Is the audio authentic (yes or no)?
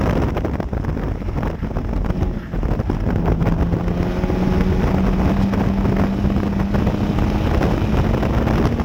yes